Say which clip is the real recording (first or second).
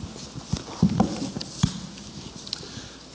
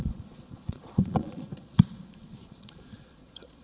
first